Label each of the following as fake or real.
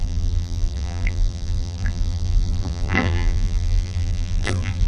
fake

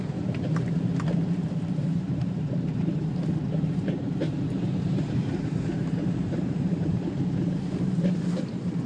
fake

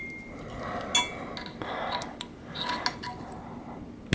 real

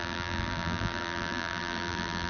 fake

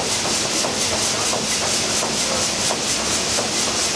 real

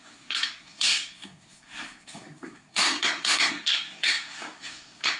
fake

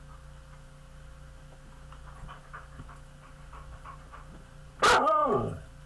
real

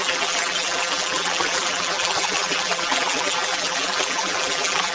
fake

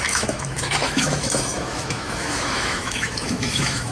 fake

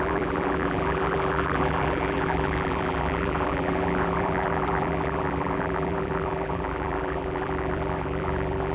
fake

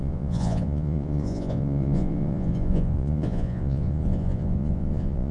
fake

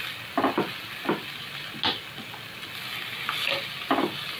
real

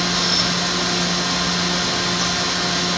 real